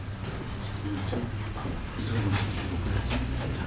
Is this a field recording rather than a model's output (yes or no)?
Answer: yes